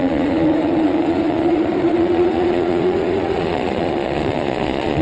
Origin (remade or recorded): remade